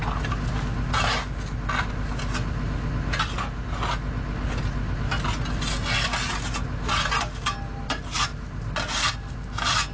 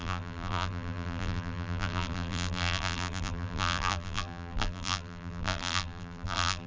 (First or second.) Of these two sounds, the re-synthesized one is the second